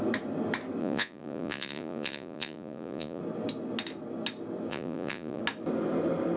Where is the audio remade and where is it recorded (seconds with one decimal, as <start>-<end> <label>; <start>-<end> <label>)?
0.0-0.8 recorded; 0.8-3.2 remade; 3.2-4.7 recorded; 4.7-5.4 remade; 5.4-6.4 recorded